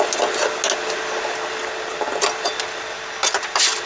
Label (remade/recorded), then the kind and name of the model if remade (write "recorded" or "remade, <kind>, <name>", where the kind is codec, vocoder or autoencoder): recorded